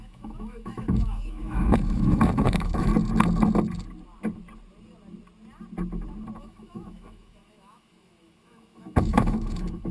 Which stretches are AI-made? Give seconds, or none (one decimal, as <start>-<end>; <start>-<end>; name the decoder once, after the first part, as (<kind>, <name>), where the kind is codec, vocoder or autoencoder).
0.0-2.9 (autoencoder, DAC-VAE); 6.4-9.9